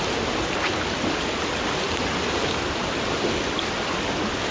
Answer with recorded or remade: recorded